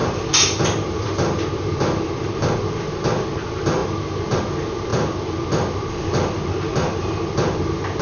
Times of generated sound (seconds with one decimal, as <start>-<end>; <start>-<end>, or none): none